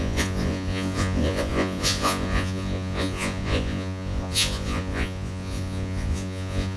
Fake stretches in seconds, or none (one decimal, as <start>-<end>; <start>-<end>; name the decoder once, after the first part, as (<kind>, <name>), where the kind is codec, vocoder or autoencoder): 0.0-6.8 (vocoder, Vocos)